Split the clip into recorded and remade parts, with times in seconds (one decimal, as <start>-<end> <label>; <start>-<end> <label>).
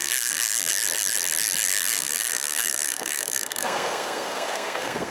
0.0-0.7 remade; 0.7-1.7 recorded; 1.7-5.1 remade